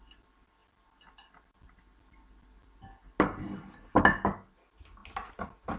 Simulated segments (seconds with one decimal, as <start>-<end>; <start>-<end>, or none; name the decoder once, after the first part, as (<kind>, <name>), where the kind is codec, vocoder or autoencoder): none